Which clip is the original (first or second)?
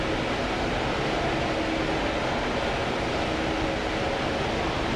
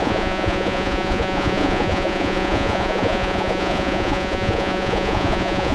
first